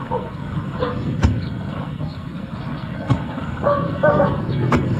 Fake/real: fake